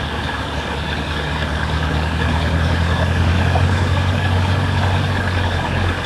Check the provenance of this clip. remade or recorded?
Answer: remade